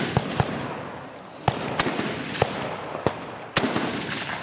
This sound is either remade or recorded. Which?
recorded